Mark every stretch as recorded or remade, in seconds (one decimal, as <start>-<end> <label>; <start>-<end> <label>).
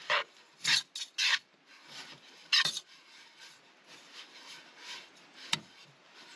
0.0-6.4 recorded